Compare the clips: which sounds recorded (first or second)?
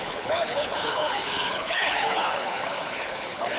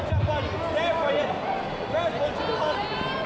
second